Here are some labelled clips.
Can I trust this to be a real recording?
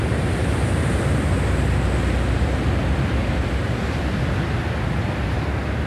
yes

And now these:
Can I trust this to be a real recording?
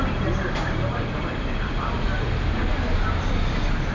yes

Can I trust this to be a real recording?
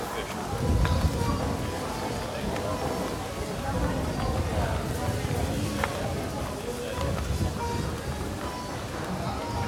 yes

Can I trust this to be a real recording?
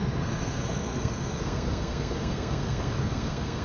no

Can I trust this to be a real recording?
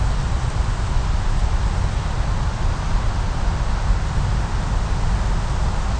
yes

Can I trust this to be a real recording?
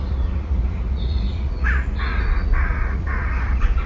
no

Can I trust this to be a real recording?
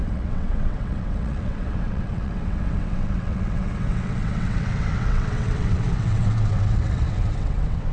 no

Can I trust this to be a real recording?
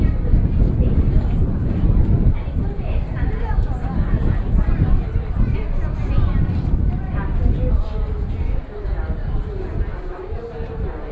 yes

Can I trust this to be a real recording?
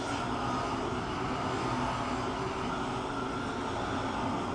yes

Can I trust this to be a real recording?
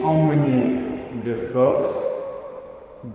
no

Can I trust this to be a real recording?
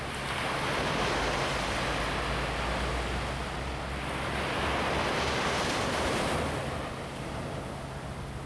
yes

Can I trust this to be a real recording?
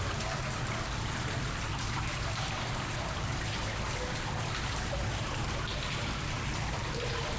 yes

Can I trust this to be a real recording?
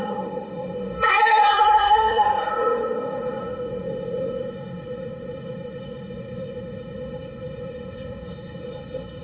no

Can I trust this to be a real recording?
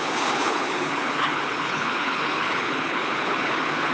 no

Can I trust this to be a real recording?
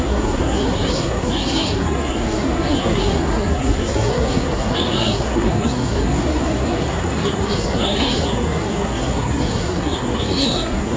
no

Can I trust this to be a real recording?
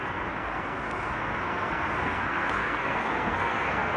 no